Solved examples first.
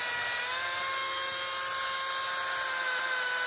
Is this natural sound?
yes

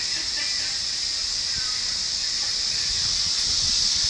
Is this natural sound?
no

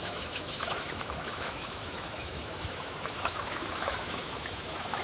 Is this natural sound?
no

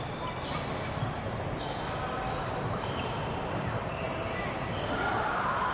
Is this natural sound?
yes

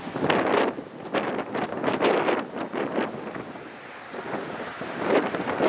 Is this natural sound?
yes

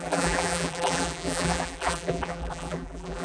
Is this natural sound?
no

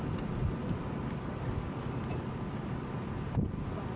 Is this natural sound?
yes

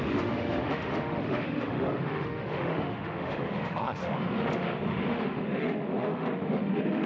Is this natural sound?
no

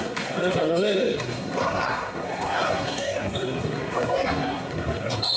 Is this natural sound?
no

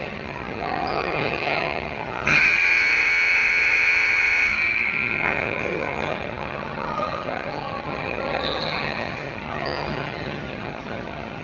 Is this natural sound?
no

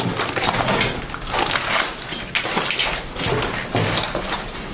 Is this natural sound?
yes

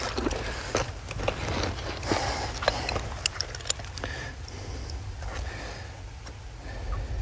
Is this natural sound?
yes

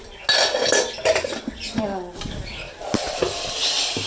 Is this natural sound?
yes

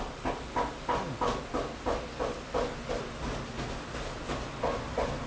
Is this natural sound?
yes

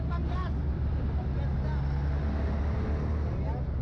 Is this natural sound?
yes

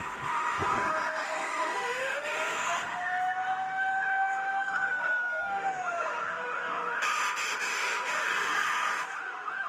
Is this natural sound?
no